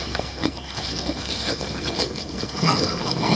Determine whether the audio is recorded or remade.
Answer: remade